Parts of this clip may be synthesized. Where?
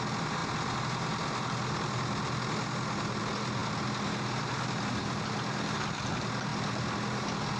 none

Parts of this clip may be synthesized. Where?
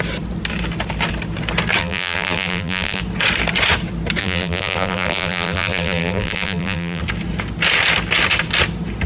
1.8-3.0 (vocoder, BigVGAN v2); 4.2-7.0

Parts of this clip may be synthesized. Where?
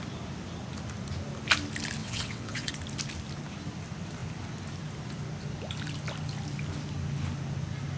2.0-2.7 (vocoder, WaveNeXt)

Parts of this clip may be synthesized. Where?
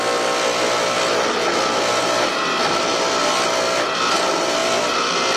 none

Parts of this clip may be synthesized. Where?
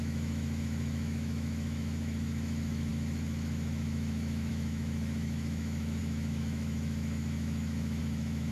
0.0-8.5 (autoencoder, DAC-VAE)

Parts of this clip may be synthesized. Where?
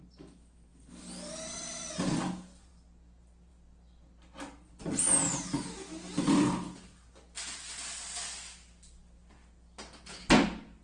none